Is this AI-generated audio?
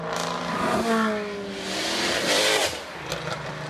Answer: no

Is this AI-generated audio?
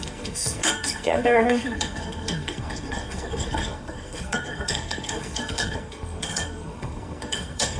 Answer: yes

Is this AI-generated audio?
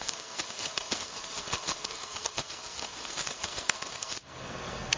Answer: yes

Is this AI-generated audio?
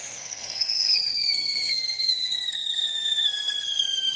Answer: yes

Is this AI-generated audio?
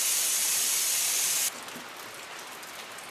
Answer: no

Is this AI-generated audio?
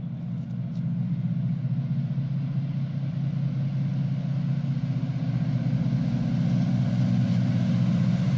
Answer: no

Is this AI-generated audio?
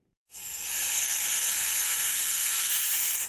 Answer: yes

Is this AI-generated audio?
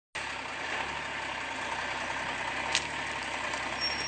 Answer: no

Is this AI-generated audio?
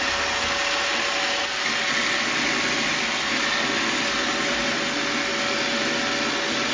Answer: no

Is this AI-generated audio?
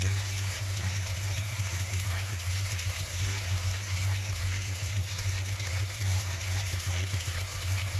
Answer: yes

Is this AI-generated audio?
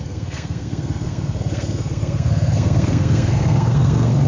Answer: yes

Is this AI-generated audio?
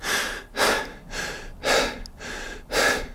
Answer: no